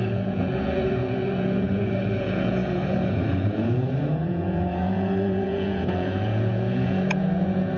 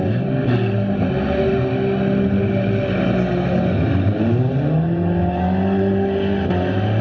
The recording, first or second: second